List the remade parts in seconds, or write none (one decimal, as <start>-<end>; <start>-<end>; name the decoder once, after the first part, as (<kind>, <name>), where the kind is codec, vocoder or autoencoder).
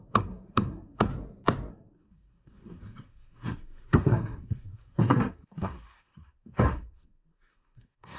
0.0-1.1 (codec, SNAC); 1.7-8.2